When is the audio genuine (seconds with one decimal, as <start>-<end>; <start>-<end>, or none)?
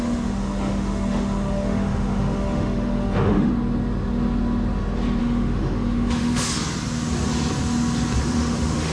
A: 3.5-5.2; 6.5-8.2